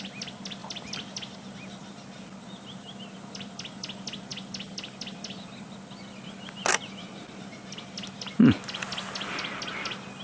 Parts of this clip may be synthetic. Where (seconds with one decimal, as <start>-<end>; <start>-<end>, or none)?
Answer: none